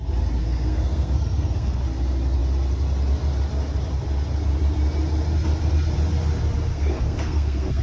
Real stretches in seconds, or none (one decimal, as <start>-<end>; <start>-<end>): 0.0-0.4; 1.8-6.7